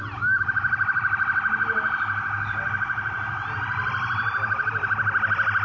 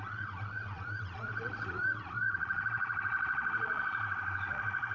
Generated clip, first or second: second